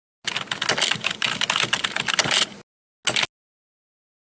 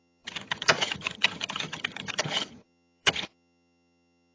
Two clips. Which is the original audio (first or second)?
first